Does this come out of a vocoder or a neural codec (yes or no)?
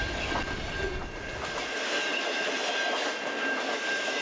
no